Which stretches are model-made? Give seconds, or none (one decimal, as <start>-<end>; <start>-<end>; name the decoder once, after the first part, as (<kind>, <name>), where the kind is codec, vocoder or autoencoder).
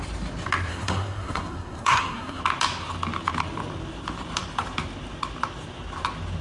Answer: 0.7-2.4 (codec, SNAC)